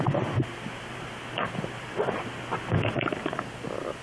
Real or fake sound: real